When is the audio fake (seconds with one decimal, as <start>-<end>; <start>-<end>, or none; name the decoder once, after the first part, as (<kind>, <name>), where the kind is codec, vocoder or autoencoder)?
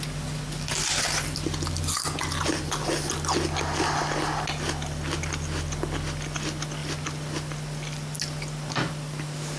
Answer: none